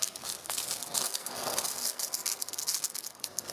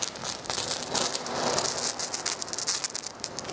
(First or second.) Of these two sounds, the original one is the second